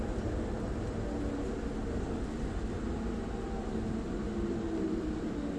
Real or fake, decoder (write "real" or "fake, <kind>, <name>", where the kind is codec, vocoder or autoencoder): real